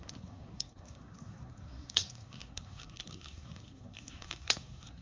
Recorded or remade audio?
remade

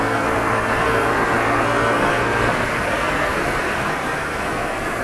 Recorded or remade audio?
remade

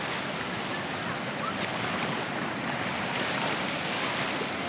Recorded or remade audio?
recorded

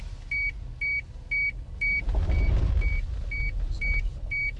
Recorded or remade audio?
recorded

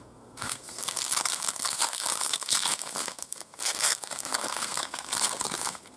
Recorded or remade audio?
remade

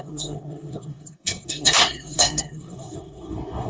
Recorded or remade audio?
remade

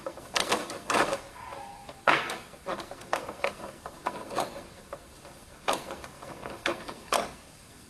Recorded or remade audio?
remade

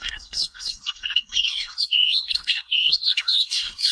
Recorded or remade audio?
remade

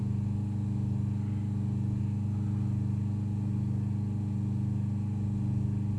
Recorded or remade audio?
recorded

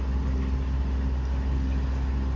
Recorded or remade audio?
recorded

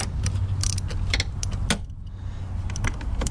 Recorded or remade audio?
recorded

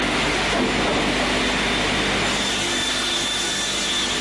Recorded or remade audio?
recorded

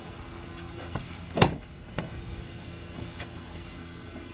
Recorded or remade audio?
remade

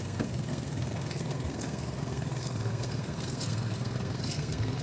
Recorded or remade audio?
remade